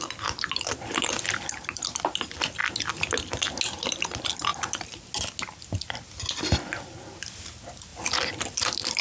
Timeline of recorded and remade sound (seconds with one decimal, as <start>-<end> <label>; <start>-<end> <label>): 0.0-7.9 recorded; 7.9-9.0 remade